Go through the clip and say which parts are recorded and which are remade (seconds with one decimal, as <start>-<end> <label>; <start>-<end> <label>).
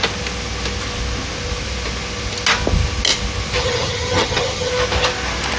0.0-3.6 recorded; 3.6-4.7 remade; 4.7-5.6 recorded